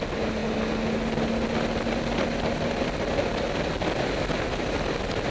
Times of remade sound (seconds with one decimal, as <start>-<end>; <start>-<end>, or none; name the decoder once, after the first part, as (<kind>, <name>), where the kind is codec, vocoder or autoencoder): none